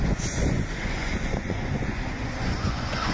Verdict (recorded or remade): remade